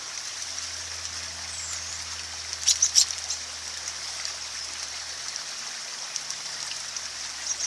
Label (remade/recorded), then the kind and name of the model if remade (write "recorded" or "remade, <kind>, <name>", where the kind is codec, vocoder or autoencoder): recorded